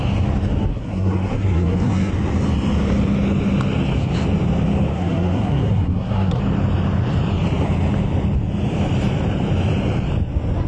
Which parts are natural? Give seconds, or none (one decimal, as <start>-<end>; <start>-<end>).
0.0-0.7; 2.1-4.9; 6.4-10.7